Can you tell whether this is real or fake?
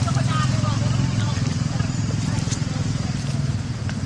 real